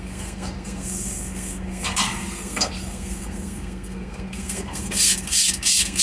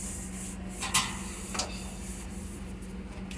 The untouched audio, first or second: second